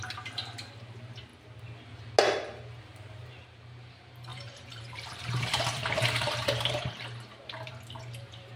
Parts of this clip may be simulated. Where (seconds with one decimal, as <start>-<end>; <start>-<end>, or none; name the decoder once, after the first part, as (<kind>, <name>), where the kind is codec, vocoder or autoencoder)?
0.0-1.3 (vocoder, BigVGAN v2); 2.8-8.6

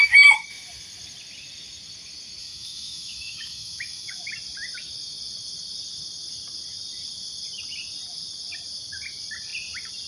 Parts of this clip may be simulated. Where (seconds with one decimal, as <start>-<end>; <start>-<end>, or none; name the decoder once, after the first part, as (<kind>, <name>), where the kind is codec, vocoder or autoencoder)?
2.4-4.2 (autoencoder, DAC-VAE)

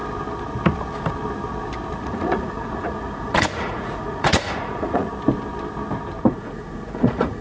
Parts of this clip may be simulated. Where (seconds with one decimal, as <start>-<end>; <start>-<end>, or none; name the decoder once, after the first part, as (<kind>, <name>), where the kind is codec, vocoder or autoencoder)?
2.0-5.1 (vocoder, Vocos); 6.3-7.4